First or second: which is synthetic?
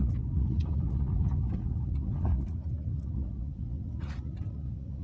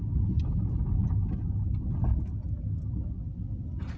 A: first